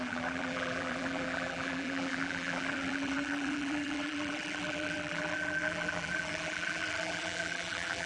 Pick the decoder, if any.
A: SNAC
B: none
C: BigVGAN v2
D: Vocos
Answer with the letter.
C